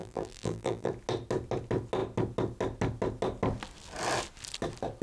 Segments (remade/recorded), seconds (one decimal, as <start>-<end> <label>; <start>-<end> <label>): 0.0-0.9 remade; 0.9-5.0 recorded